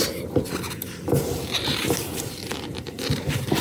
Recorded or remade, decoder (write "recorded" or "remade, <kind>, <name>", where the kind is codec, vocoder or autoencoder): remade, vocoder, BigVGAN v2